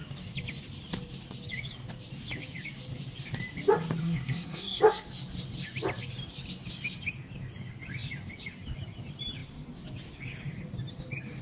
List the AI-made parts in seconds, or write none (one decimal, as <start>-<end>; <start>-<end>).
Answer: 4.0-4.8